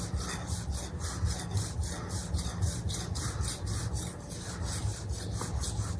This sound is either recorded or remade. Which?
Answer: recorded